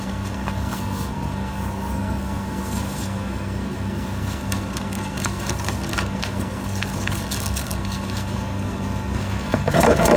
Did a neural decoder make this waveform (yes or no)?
yes